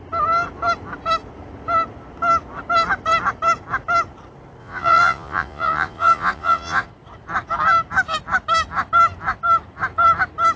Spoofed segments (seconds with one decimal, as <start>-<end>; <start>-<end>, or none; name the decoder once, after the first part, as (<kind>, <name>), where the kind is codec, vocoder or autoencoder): 4.6-6.9 (vocoder, Vocos)